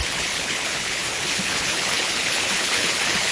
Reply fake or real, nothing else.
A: fake